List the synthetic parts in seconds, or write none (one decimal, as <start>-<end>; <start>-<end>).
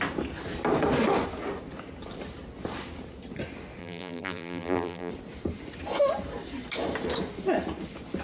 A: 3.8-5.1